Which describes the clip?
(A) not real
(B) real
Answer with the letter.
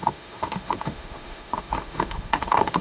A